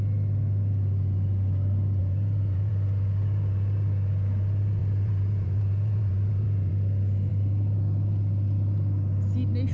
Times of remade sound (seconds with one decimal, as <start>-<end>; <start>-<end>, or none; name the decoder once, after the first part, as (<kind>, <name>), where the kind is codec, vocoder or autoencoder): 2.0-2.7 (vocoder, BigVGAN v2); 4.8-6.7